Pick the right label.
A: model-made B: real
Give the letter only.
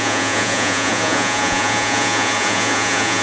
A